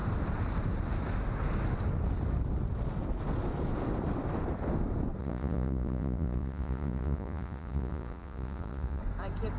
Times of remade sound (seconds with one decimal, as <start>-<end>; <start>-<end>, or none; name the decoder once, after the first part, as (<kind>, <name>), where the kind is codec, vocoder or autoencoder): 5.2-9.0 (vocoder, Vocos)